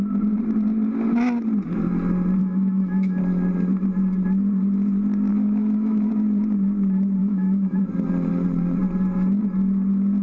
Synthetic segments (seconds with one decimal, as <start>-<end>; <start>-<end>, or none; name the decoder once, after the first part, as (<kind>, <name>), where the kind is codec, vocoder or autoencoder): 2.4-3.2 (autoencoder, DAC-VAE); 5.3-6.1; 7.2-7.8